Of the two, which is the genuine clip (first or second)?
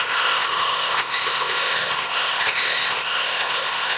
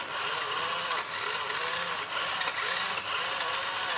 second